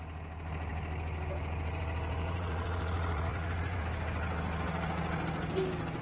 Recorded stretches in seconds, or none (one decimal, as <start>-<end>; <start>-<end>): 0.0-2.2; 3.8-6.0